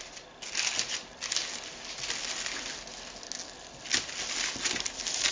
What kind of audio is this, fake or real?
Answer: real